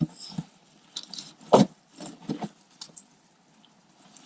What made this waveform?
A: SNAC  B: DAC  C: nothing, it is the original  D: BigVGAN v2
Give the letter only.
D